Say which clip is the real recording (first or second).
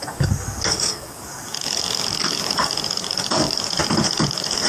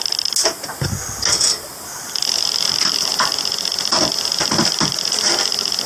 second